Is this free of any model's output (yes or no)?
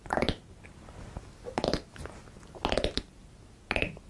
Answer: yes